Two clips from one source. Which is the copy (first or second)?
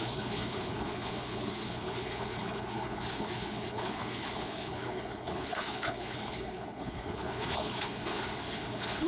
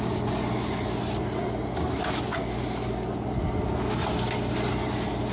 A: first